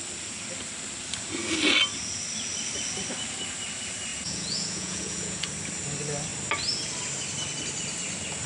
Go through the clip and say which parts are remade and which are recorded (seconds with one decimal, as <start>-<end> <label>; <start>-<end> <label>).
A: 0.0-4.1 recorded; 4.1-5.5 remade; 5.5-8.5 recorded